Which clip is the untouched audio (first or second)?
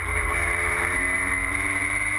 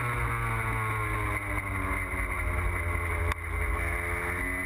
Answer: second